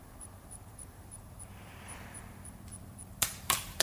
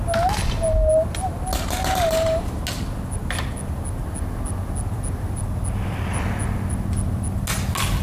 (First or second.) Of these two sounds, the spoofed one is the first